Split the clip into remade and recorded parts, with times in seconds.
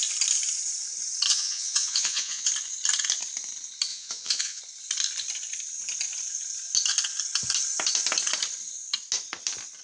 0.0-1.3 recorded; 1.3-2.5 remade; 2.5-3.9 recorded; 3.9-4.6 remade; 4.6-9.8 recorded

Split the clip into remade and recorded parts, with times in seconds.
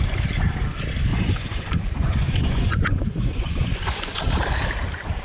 0.0-1.1 recorded; 1.1-4.2 remade; 4.2-5.2 recorded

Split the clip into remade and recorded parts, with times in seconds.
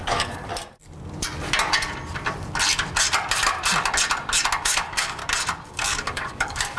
0.0-0.5 remade; 0.5-4.6 recorded; 4.6-5.2 remade; 5.2-5.7 recorded; 5.7-6.8 remade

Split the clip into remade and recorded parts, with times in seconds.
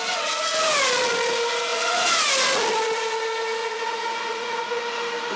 0.0-1.7 recorded; 1.7-2.3 remade; 2.3-3.6 recorded; 3.6-4.8 remade; 4.8-5.4 recorded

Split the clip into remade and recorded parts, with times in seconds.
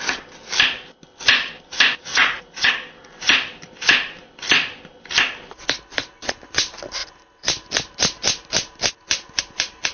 0.0-2.1 recorded; 2.1-2.7 remade; 2.7-9.9 recorded